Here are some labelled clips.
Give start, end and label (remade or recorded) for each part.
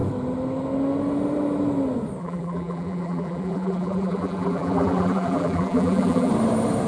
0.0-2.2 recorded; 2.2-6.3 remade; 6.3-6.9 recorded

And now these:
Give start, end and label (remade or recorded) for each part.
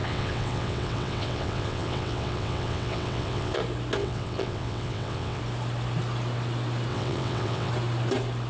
0.0-3.6 remade; 3.6-4.0 recorded; 4.0-5.4 remade; 5.4-6.9 recorded; 6.9-7.7 remade; 7.7-8.5 recorded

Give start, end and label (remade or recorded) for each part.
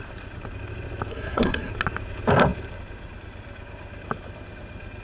0.0-1.1 recorded; 1.1-1.7 remade; 1.7-5.0 recorded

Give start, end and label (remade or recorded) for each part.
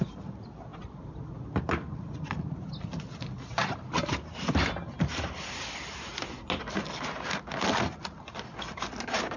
0.0-9.4 recorded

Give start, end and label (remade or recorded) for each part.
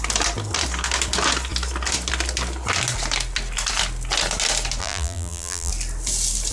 0.0-4.8 recorded; 4.8-5.7 remade; 5.7-6.5 recorded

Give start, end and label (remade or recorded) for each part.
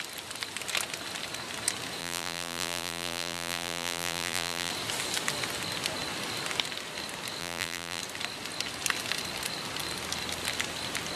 0.0-2.0 recorded; 2.0-4.7 remade; 4.7-7.4 recorded; 7.4-8.0 remade; 8.0-11.2 recorded